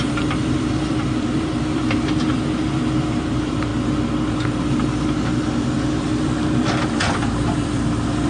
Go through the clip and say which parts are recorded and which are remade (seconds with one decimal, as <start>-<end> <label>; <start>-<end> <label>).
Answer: 0.0-3.7 remade; 3.7-5.6 recorded; 5.6-8.3 remade